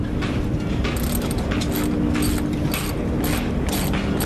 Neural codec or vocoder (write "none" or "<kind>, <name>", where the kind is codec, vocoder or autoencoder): none